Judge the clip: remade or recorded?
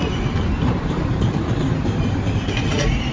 remade